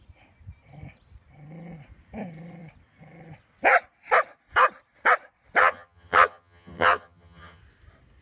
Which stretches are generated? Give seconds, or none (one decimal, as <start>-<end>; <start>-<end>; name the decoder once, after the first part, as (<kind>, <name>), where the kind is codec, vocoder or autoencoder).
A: 5.6-7.6 (vocoder, HiFi-GAN)